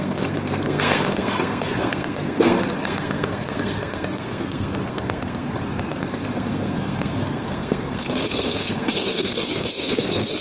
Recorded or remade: remade